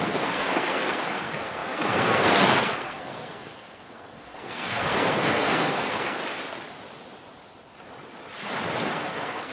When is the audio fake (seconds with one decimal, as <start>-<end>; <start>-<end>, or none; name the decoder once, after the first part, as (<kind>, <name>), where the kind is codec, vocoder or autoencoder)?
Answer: 0.0-6.2 (codec, SNAC); 8.9-9.5